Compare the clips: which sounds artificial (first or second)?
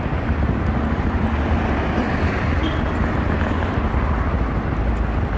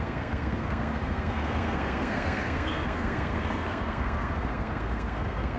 second